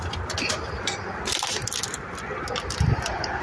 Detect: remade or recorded recorded